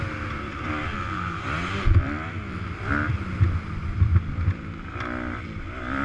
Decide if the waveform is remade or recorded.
recorded